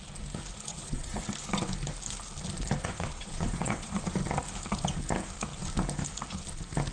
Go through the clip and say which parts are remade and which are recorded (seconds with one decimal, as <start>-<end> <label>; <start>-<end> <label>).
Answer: 0.0-0.7 recorded; 0.7-1.2 remade; 1.2-2.8 recorded; 2.8-4.0 remade; 4.0-6.9 recorded